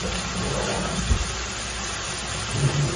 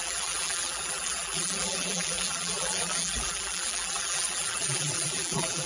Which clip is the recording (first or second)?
first